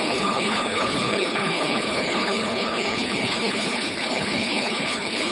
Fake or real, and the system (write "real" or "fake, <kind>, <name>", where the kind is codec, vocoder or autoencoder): fake, codec, HILCodec